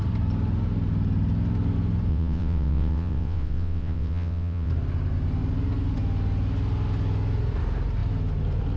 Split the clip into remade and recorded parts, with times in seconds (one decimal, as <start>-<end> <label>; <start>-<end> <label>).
0.0-2.1 recorded; 2.1-4.7 remade; 4.7-8.8 recorded